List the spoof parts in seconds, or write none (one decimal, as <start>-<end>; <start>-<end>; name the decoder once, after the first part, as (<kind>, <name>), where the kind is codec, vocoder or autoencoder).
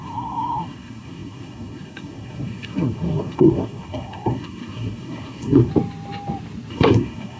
0.0-5.7 (codec, SNAC); 6.7-7.4